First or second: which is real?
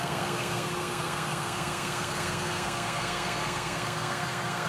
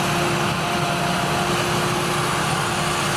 second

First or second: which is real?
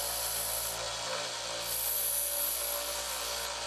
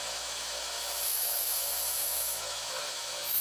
first